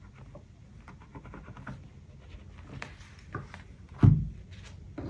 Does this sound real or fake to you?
real